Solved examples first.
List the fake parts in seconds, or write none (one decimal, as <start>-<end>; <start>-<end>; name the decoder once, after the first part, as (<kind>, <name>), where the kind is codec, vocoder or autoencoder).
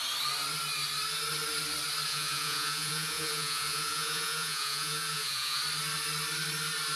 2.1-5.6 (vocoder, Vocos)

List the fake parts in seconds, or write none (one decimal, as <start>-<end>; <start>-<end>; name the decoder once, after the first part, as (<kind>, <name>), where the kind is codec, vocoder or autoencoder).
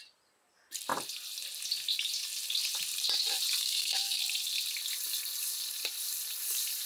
3.6-4.2 (codec, SNAC)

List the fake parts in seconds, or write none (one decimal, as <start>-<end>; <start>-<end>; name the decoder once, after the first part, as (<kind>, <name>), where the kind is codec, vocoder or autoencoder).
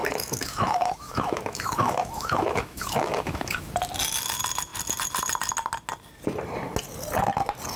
0.0-3.7 (autoencoder, DAC-VAE)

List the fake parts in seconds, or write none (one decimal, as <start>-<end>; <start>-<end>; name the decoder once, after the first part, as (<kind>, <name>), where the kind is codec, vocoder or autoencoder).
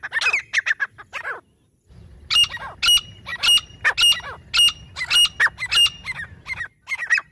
1.1-2.6 (vocoder, BigVGAN v2)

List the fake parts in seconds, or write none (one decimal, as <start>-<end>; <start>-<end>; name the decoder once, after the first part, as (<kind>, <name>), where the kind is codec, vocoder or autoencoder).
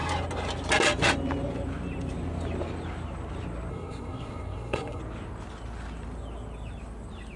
3.7-5.0 (codec, SNAC)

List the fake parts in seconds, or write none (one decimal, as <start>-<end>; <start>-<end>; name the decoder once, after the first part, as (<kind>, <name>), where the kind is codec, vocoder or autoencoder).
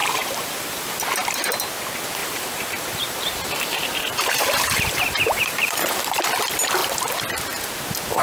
0.0-1.0 (vocoder, BigVGAN v2); 2.2-6.2